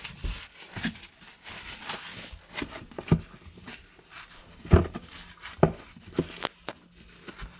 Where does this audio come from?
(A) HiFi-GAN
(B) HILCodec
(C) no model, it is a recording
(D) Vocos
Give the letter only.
C